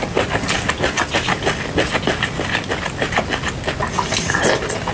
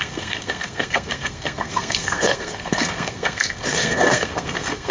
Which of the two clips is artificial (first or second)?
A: second